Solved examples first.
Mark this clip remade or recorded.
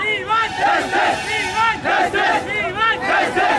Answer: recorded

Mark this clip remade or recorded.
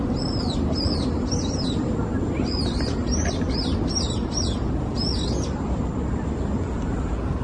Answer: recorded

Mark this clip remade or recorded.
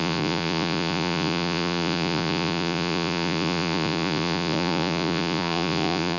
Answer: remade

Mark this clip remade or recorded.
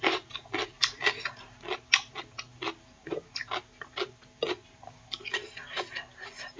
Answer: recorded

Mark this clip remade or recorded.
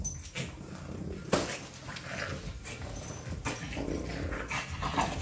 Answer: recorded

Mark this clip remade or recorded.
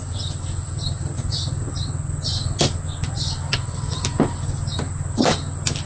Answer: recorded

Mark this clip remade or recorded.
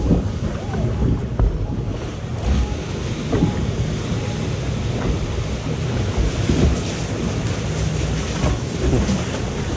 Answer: recorded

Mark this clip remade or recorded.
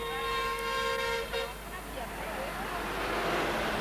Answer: recorded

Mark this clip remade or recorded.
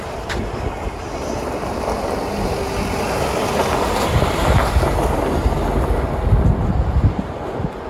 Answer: recorded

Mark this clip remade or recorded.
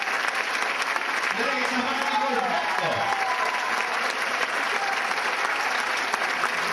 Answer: recorded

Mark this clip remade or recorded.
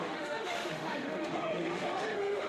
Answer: remade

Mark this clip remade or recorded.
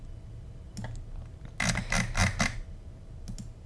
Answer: recorded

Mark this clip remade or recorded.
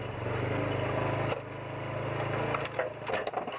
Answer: recorded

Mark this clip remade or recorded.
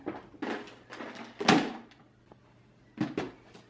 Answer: recorded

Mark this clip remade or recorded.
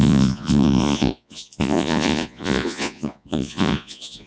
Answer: remade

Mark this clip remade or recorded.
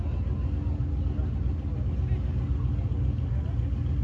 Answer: recorded